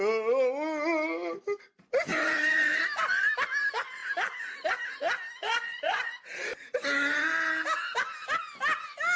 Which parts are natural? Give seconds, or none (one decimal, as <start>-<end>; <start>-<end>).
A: 0.0-2.1; 2.8-5.4; 6.1-9.2